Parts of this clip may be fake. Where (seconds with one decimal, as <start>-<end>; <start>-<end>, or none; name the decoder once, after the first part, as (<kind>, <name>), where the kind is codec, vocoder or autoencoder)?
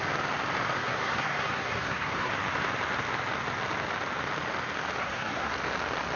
0.8-2.3 (codec, SNAC); 5.0-5.5